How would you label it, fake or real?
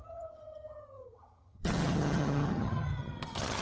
fake